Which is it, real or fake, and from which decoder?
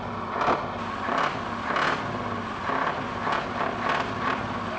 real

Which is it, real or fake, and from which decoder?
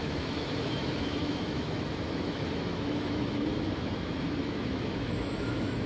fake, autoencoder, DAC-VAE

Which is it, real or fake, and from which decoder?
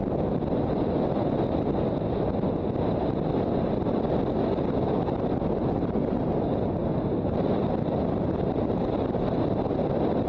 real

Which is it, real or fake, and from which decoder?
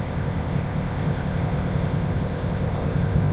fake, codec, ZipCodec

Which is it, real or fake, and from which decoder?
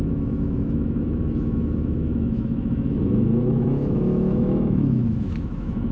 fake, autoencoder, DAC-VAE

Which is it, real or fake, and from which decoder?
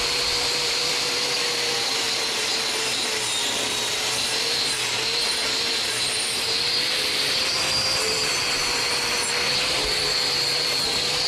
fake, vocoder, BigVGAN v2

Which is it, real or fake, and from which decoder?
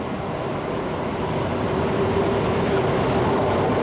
real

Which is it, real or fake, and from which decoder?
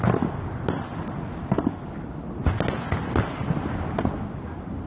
real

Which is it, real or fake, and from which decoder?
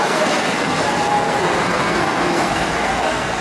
fake, codec, SNAC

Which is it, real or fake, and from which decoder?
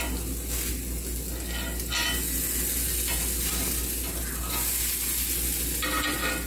real